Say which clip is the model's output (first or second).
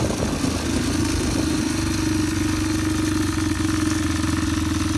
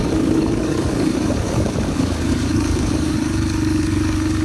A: second